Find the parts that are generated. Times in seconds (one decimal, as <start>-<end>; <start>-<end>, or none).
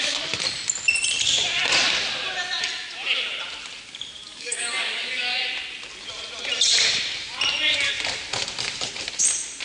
4.3-5.4